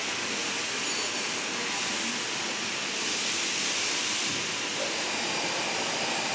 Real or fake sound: real